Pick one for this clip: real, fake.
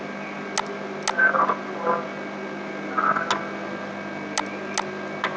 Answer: real